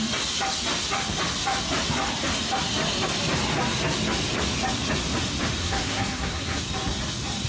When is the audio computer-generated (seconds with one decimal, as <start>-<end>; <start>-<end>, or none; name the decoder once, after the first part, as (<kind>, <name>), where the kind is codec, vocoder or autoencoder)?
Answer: 5.6-6.6 (codec, SNAC)